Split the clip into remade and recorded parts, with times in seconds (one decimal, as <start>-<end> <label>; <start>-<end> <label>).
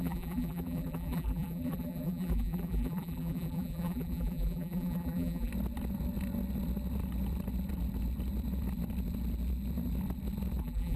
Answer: 0.0-5.5 remade; 5.5-10.6 recorded; 10.6-11.0 remade